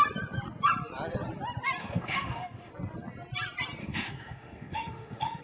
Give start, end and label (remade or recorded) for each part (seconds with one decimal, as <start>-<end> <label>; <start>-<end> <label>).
0.0-1.8 recorded; 1.8-2.7 remade; 2.7-3.8 recorded; 3.8-5.4 remade

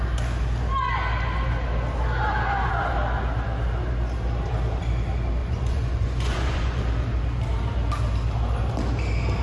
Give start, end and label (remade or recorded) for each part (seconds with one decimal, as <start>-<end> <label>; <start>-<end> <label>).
0.0-5.4 recorded; 5.4-6.8 remade; 6.8-9.4 recorded

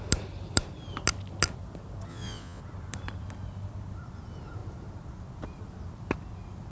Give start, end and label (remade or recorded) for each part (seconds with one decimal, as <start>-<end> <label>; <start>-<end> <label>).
0.0-2.1 recorded; 2.1-2.6 remade; 2.6-6.7 recorded

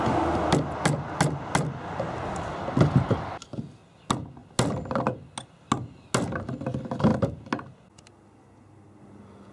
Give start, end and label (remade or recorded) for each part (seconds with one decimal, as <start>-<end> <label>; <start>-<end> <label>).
0.0-9.5 recorded

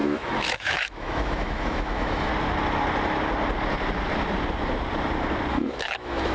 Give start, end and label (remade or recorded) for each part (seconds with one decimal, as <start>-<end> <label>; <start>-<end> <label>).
0.0-2.3 remade; 2.3-5.5 recorded; 5.5-6.3 remade

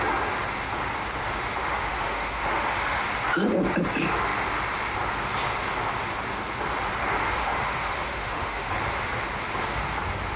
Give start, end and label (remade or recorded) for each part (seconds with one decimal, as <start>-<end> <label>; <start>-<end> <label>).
0.0-1.6 recorded; 1.6-3.0 remade; 3.0-7.4 recorded; 7.4-8.7 remade; 8.7-10.4 recorded